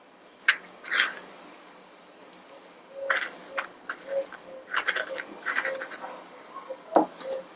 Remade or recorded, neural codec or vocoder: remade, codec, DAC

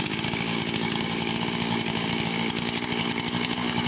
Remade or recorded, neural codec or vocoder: remade, codec, DAC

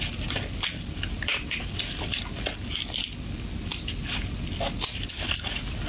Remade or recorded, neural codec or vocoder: recorded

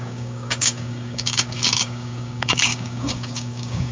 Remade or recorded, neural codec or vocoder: remade, codec, DAC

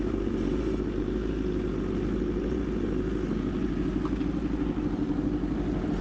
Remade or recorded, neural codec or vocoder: recorded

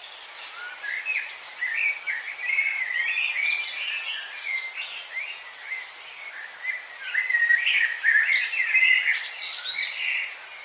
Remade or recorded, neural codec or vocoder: recorded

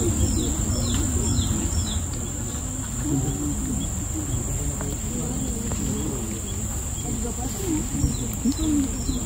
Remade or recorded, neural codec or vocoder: recorded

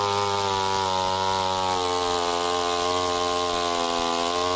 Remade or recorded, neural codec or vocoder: recorded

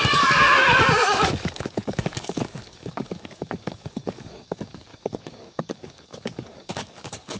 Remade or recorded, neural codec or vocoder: remade, codec, DAC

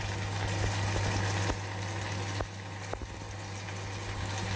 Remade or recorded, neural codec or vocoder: recorded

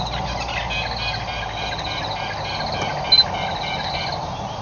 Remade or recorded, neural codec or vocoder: recorded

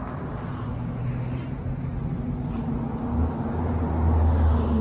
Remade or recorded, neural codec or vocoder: recorded